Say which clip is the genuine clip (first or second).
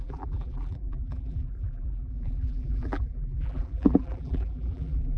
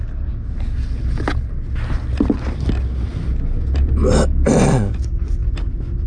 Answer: second